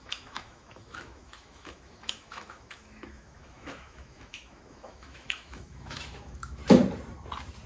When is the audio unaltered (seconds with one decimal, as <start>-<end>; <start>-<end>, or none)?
6.6-7.7